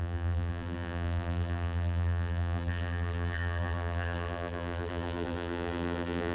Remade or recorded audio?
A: remade